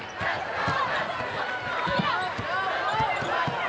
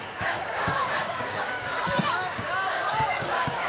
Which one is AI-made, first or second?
second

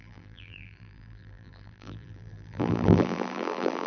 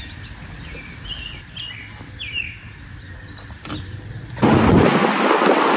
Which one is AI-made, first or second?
first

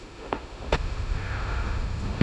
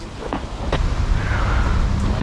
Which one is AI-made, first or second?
first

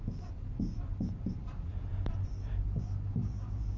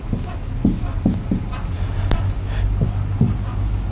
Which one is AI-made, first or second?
first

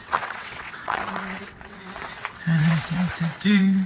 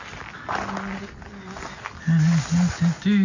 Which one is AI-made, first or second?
first